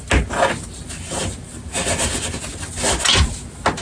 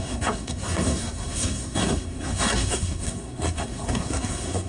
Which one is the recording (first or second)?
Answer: first